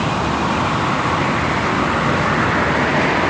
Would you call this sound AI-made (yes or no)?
no